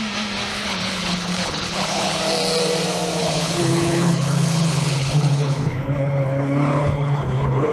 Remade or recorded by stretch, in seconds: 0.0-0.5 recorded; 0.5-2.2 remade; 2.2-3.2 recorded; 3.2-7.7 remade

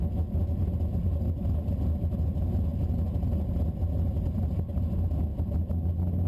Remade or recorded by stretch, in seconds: 0.0-6.3 recorded

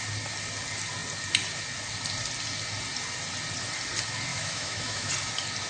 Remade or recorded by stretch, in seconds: 0.0-4.3 recorded; 4.3-5.1 remade; 5.1-5.7 recorded